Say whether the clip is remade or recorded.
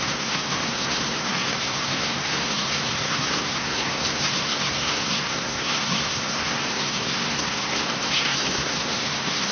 remade